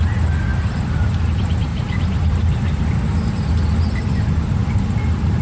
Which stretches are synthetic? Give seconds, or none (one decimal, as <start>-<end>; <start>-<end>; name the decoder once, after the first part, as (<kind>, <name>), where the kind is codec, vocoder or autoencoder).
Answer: 0.5-1.2 (vocoder, BigVGAN v2); 1.7-2.8